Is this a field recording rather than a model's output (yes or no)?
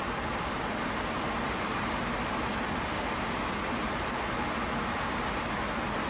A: yes